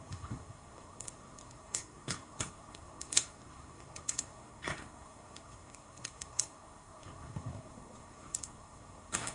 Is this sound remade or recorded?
remade